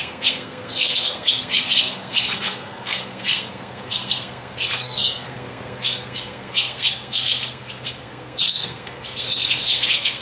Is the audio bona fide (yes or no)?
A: no